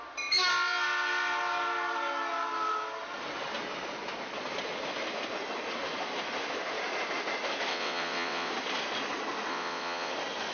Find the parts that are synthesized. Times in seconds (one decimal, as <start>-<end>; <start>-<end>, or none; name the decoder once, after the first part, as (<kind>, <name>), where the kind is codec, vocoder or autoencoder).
7.7-8.5 (vocoder, WaveNeXt); 9.5-10.1